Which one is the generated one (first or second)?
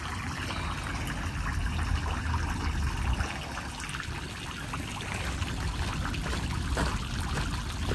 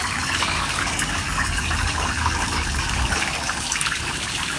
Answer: second